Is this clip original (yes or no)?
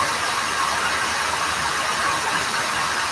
yes